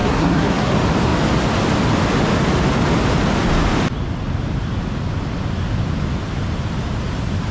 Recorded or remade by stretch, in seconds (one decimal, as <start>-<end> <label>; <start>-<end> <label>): 0.0-0.7 remade; 0.7-7.5 recorded